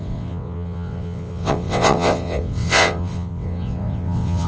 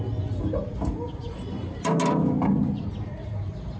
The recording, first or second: second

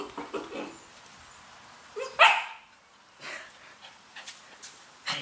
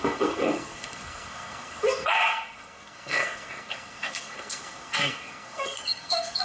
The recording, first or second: first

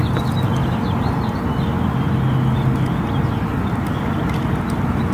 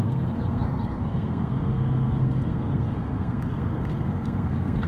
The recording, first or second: first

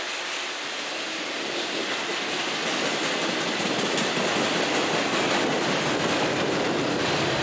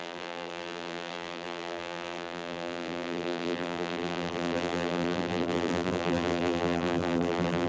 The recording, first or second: first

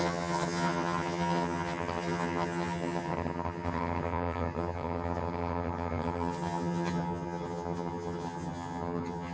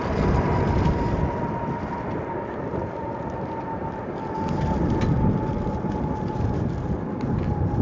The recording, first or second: second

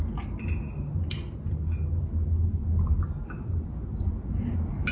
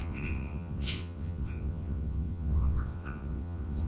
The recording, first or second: first